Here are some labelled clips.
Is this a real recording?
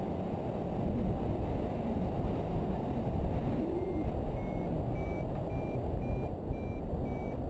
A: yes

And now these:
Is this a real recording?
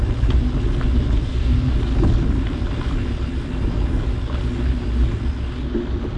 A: yes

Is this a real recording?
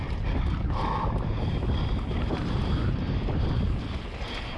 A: yes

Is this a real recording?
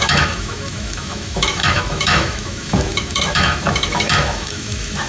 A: no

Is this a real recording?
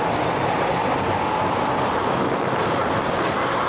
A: yes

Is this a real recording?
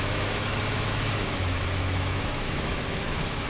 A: no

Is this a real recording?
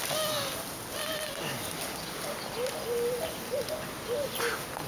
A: yes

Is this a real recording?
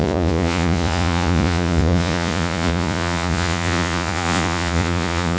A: no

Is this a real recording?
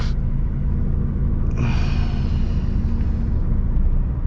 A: yes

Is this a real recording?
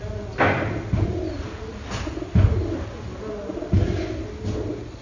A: yes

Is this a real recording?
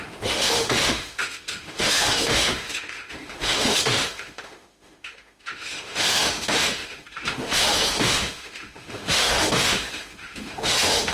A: no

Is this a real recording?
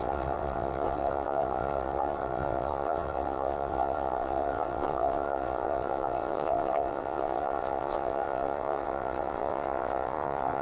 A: no